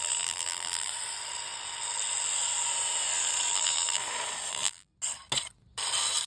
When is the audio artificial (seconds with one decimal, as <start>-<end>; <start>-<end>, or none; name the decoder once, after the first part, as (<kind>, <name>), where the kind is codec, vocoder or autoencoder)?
0.0-0.9 (vocoder, BigVGAN v2); 3.5-4.0; 4.5-4.9